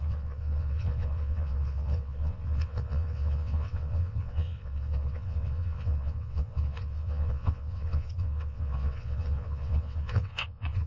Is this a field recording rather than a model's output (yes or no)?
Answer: no